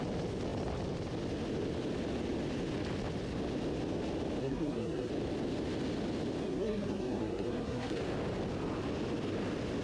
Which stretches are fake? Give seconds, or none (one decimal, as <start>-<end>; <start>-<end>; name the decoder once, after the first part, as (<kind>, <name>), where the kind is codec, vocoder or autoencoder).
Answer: 4.4-5.1 (codec, SNAC); 6.4-8.0

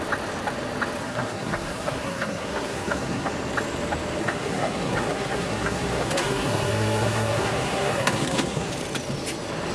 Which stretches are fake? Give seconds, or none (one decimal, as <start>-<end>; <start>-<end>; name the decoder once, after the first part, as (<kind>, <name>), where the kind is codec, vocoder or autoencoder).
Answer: 1.0-3.3 (codec, SNAC); 4.2-8.7

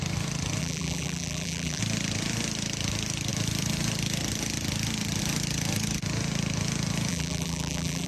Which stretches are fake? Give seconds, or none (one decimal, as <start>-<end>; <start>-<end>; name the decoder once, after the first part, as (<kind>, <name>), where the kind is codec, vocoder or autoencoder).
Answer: 0.6-1.8 (vocoder, BigVGAN v2); 7.1-8.1